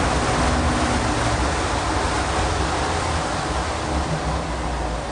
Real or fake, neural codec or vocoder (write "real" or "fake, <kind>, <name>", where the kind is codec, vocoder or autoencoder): real